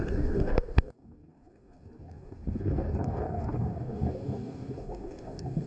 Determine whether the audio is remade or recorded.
remade